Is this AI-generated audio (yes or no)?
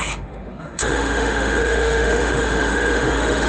yes